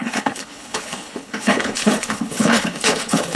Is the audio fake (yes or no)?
yes